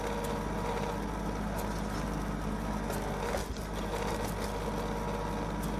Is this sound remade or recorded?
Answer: recorded